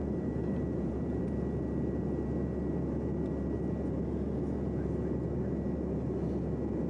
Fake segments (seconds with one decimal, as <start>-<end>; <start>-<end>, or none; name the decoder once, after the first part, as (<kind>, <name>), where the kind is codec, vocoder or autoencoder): 0.0-1.2 (vocoder, BigVGAN v2)